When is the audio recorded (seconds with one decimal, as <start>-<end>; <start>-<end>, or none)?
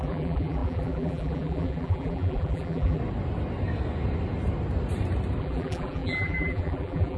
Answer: 3.0-5.4